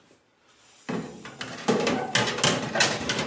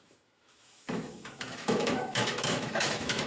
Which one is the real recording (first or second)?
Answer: first